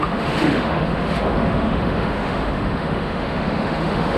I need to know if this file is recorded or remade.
remade